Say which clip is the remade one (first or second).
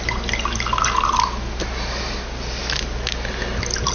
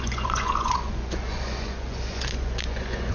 second